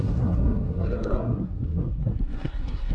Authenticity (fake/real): fake